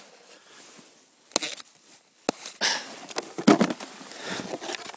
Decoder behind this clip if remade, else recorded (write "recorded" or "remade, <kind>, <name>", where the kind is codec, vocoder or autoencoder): recorded